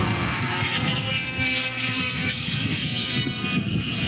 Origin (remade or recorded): remade